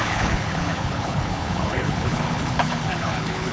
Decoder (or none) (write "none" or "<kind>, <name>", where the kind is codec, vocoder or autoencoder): codec, HILCodec